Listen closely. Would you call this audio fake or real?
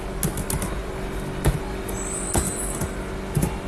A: real